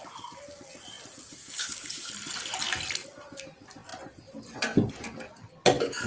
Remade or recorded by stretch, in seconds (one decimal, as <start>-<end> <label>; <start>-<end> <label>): 0.0-1.4 recorded; 1.4-2.1 remade; 2.1-6.1 recorded